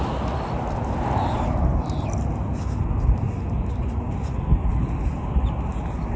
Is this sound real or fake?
real